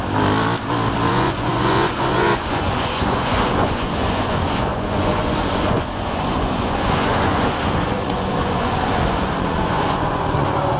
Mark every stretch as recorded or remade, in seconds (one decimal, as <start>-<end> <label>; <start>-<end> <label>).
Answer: 0.0-1.1 recorded; 1.1-10.8 remade

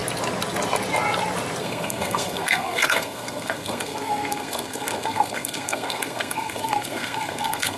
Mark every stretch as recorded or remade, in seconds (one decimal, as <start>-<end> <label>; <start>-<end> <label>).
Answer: 0.0-1.6 recorded; 1.6-7.8 remade

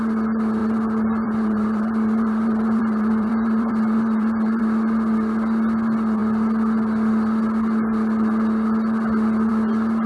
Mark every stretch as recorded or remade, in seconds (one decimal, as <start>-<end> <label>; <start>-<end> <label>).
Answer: 0.0-0.6 recorded; 0.6-4.6 remade; 4.6-10.1 recorded

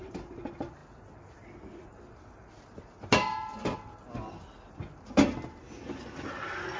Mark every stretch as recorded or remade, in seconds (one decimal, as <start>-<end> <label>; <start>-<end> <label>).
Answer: 0.0-6.8 recorded

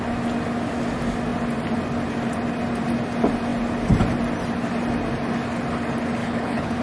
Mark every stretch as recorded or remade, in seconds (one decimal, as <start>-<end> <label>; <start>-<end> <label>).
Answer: 0.0-6.2 recorded; 6.2-6.8 remade

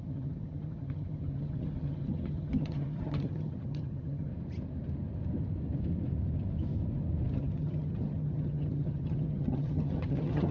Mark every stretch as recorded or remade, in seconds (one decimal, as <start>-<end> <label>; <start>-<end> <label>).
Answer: 0.0-4.3 remade; 4.3-7.3 recorded; 7.3-10.5 remade

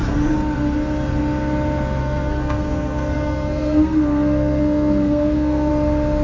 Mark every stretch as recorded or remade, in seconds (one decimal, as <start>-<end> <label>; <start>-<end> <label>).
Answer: 0.0-2.0 recorded; 2.0-5.7 remade; 5.7-6.2 recorded

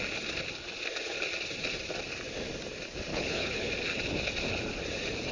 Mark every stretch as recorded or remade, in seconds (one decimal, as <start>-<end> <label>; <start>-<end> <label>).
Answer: 0.0-3.1 recorded; 3.1-3.7 remade; 3.7-5.3 recorded